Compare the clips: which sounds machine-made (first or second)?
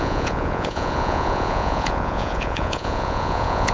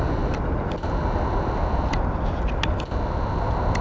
first